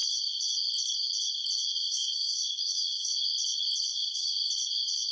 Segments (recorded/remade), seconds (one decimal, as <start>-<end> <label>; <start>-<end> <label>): 0.0-1.7 recorded; 1.7-3.1 remade; 3.1-3.9 recorded; 3.9-4.5 remade; 4.5-5.1 recorded